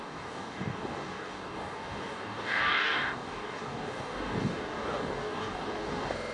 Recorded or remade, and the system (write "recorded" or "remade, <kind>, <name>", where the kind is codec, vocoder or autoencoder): remade, codec, DAC